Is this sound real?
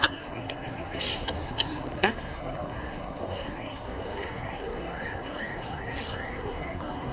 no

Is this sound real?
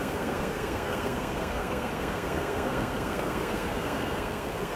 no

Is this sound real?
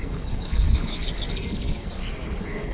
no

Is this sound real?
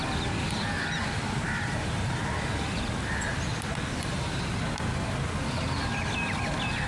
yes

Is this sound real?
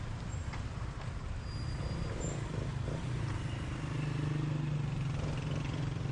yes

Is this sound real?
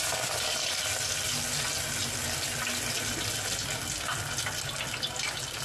yes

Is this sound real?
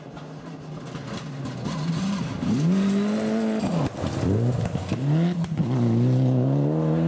yes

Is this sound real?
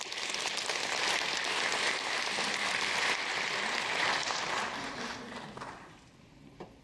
yes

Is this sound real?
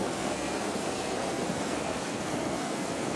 no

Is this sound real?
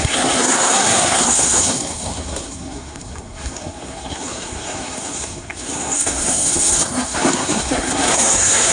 no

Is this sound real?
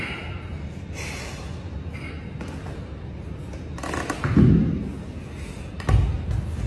yes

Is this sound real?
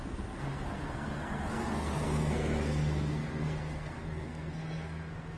no